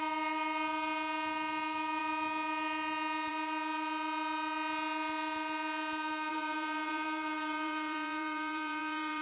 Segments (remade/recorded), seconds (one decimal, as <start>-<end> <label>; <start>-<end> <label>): 0.0-6.3 recorded; 6.3-9.2 remade

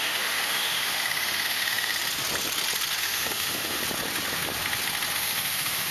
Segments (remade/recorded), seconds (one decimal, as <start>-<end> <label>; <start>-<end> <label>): 0.0-1.9 remade; 1.9-3.0 recorded; 3.0-3.8 remade; 3.8-5.1 recorded; 5.1-5.9 remade

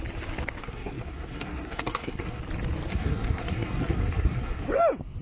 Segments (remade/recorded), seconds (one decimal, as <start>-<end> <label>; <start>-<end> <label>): 0.0-0.6 recorded; 0.6-2.4 remade; 2.4-2.9 recorded; 2.9-4.8 remade; 4.8-5.2 recorded

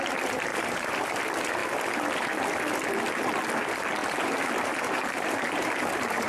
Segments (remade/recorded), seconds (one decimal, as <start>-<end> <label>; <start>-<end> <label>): 0.0-0.5 recorded; 0.5-1.2 remade; 1.2-4.0 recorded; 4.0-6.3 remade

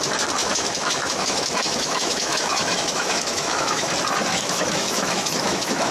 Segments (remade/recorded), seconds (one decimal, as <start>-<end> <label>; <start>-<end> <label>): 0.0-0.4 recorded; 0.4-3.9 remade; 3.9-4.3 recorded; 4.3-5.9 remade